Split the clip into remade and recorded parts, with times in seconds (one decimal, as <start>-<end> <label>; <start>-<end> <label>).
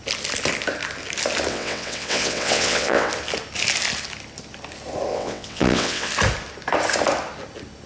0.0-1.5 recorded; 1.5-3.1 remade; 3.1-5.1 recorded; 5.1-6.1 remade; 6.1-7.9 recorded